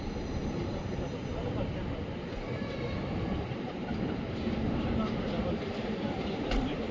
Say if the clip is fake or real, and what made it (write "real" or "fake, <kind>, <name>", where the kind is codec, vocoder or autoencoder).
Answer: fake, vocoder, BigVGAN v2